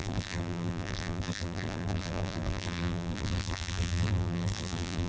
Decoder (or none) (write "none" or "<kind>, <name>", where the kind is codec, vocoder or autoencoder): vocoder, BigVGAN v2